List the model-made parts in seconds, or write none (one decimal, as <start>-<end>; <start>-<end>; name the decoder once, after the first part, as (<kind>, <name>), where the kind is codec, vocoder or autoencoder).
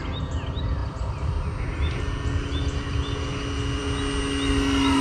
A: none